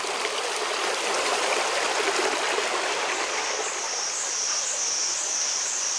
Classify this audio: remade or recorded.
recorded